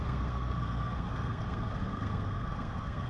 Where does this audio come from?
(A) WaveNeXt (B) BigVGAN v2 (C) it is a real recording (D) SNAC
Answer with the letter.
D